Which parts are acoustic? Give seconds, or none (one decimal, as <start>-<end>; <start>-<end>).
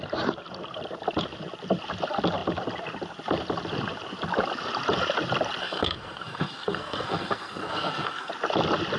0.0-5.6; 8.3-9.0